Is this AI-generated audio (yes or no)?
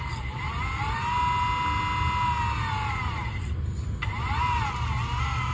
no